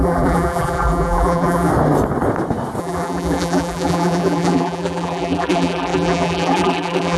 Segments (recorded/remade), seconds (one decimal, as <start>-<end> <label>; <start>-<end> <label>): 0.0-1.7 remade; 1.7-2.8 recorded; 2.8-7.2 remade